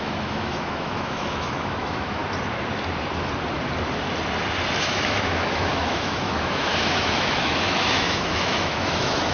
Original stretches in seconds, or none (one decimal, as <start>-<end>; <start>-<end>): 2.2-4.8